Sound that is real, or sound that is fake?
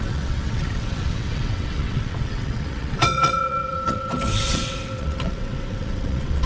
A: fake